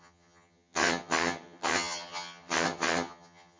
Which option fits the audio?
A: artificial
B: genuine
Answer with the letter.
A